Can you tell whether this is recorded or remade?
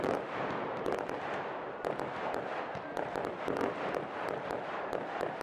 recorded